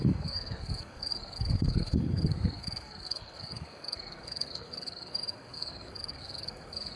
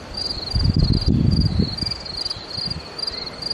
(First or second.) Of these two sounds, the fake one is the first